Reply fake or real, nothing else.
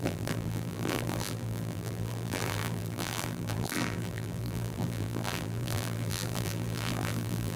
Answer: fake